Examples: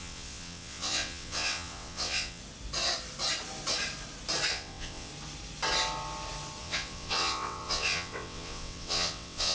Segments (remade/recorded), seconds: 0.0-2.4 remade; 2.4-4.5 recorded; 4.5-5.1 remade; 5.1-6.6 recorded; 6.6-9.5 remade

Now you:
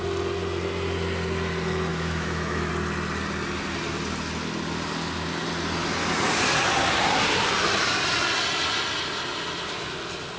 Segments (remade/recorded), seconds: 0.0-1.9 recorded; 1.9-2.7 remade; 2.7-10.4 recorded

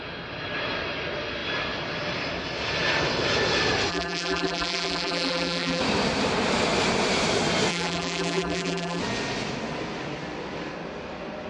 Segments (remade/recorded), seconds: 0.0-3.9 recorded; 3.9-5.8 remade; 5.8-7.7 recorded; 7.7-9.0 remade; 9.0-11.5 recorded

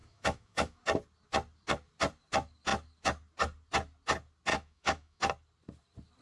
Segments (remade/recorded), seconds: 0.0-0.8 remade; 0.8-4.5 recorded; 4.5-5.2 remade; 5.2-6.2 recorded